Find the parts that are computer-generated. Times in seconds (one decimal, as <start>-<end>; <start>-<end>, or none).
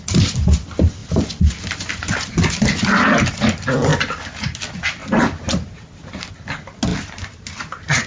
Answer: 5.0-6.3; 6.9-8.1